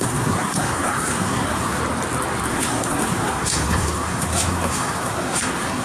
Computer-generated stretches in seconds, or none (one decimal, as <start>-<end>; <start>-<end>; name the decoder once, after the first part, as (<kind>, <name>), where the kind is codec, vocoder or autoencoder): 0.0-1.8 (codec, SNAC); 2.5-5.8